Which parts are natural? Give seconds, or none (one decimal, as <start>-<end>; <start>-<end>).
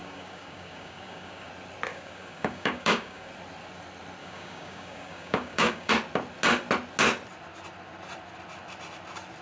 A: 1.5-1.9; 3.3-4.2; 5.9-9.4